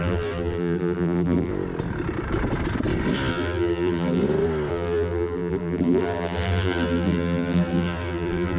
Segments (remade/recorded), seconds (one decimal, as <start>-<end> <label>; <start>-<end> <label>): 0.0-1.5 remade; 1.5-3.3 recorded; 3.3-4.2 remade; 4.2-4.7 recorded; 4.7-8.6 remade